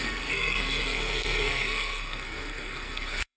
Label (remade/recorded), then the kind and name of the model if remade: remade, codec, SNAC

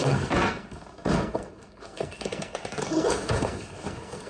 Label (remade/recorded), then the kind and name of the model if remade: remade, codec, SNAC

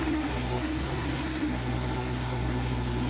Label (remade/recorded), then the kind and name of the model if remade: remade, codec, SNAC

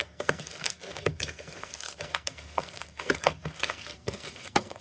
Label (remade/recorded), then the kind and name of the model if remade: remade, codec, SNAC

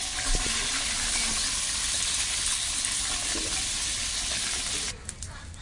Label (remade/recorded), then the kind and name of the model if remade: recorded